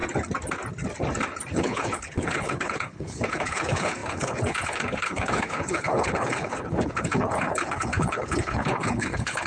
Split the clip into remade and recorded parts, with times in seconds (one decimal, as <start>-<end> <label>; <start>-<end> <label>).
0.0-1.5 recorded; 1.5-9.5 remade